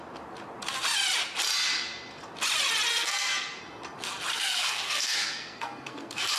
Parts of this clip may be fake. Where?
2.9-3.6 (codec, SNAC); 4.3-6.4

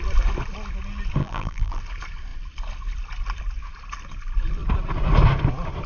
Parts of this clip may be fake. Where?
1.2-1.8 (vocoder, BigVGAN v2)

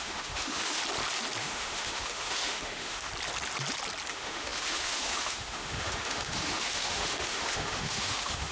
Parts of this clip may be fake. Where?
0.0-0.8 (autoencoder, DAC-VAE); 1.4-3.1; 4.1-8.5

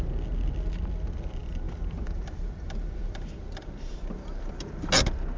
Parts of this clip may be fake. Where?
1.4-4.6 (vocoder, BigVGAN v2)

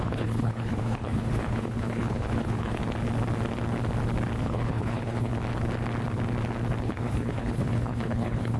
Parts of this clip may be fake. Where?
0.0-2.8 (codec, HILCodec); 4.4-5.3; 6.8-8.6

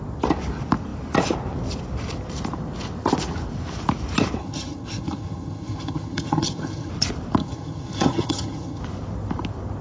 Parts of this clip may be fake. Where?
4.4-6.9 (vocoder, HiFi-GAN); 7.4-8.8

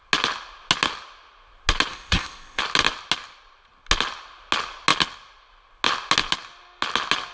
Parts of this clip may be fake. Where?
1.9-2.6 (codec, ZipCodec)

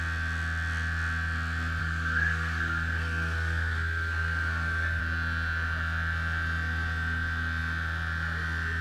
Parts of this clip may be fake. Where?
1.8-5.0 (codec, SNAC)